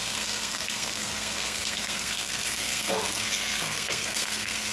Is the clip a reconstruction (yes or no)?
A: yes